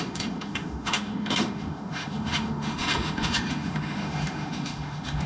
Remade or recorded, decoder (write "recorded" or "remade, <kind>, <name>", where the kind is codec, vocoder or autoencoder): remade, autoencoder, DAC-VAE